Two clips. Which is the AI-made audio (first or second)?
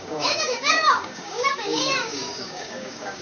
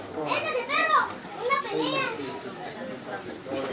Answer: first